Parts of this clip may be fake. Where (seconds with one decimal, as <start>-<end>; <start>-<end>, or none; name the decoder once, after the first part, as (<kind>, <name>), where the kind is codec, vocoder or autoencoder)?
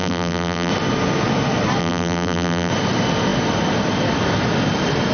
0.0-0.7 (vocoder, BigVGAN v2); 1.8-2.7